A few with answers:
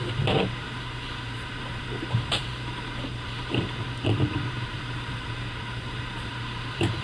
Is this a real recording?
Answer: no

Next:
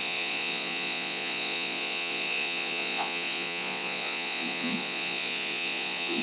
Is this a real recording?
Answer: no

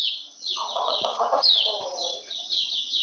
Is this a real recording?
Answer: no